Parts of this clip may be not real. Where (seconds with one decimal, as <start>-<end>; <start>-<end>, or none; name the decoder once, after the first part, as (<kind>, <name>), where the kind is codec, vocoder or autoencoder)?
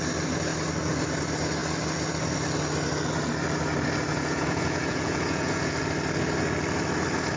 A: 4.1-5.8 (vocoder, Vocos)